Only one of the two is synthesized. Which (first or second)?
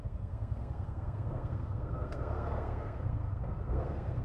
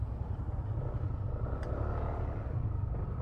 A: first